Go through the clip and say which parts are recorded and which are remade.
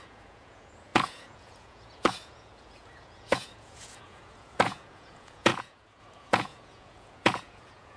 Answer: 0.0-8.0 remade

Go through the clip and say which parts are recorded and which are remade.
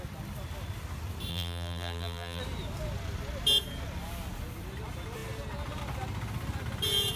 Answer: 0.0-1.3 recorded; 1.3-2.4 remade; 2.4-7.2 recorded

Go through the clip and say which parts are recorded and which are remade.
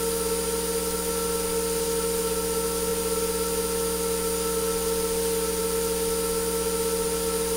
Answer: 0.0-7.6 recorded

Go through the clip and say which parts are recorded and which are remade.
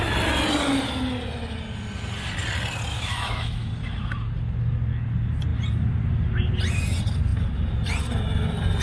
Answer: 0.0-2.9 recorded; 2.9-3.7 remade; 3.7-8.8 recorded